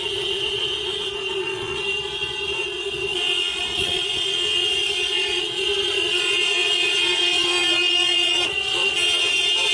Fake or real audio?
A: fake